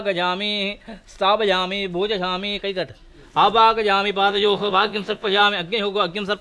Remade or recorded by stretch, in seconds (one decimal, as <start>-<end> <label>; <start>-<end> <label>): 0.0-4.3 recorded; 4.3-5.4 remade; 5.4-6.4 recorded